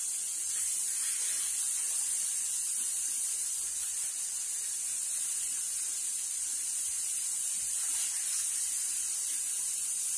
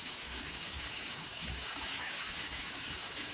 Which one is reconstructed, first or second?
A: second